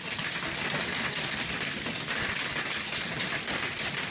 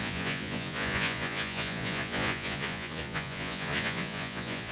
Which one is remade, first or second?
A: second